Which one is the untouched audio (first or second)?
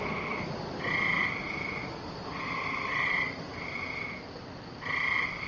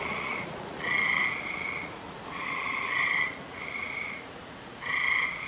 first